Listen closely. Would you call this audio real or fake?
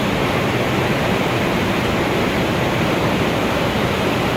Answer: real